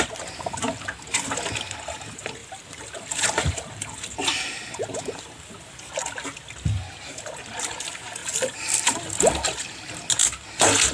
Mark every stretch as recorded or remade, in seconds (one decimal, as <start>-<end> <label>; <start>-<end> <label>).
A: 0.0-2.4 recorded; 2.4-5.8 remade; 5.8-8.2 recorded; 8.2-10.1 remade; 10.1-10.9 recorded